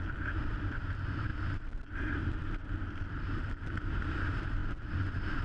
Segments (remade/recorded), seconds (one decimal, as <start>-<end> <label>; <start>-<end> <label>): 0.0-1.3 recorded; 1.3-3.7 remade; 3.7-5.4 recorded